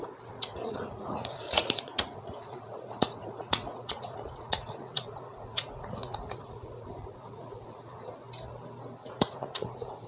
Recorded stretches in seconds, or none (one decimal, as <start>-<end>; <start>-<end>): 8.1-9.0